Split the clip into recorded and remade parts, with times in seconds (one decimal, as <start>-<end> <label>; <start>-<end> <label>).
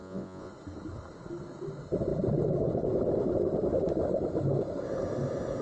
0.0-0.5 remade; 0.5-5.6 recorded